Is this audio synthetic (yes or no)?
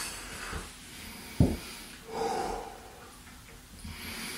no